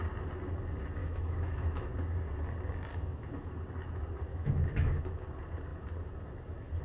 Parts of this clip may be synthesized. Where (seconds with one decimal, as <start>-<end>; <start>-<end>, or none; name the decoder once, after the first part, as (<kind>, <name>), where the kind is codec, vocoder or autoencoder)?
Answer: 1.0-1.9 (autoencoder, DAC-VAE); 2.9-3.5; 4.3-5.0